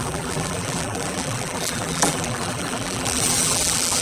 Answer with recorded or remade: remade